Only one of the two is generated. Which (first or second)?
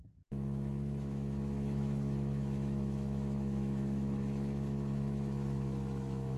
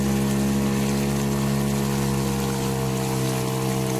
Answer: first